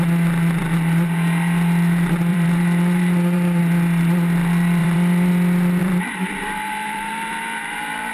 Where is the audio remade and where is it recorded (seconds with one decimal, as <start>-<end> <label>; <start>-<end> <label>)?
0.0-2.3 recorded; 2.3-3.6 remade; 3.6-4.8 recorded; 4.8-5.3 remade; 5.3-5.8 recorded; 5.8-8.1 remade